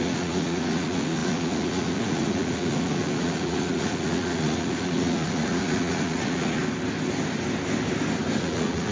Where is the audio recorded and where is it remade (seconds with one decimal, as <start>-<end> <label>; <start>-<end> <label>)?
0.0-6.6 remade; 6.6-8.4 recorded; 8.4-8.9 remade